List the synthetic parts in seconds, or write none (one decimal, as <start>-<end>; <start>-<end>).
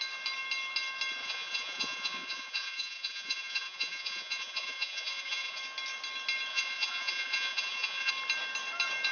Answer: 1.2-5.6; 6.5-8.1